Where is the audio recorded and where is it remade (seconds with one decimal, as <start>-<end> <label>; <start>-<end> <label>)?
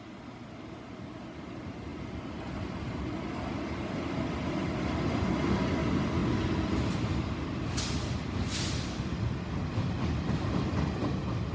0.0-11.5 recorded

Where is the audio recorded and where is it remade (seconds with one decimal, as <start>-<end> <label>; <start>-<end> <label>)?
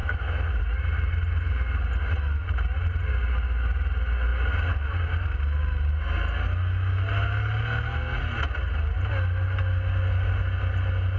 0.0-0.6 remade; 0.6-11.2 recorded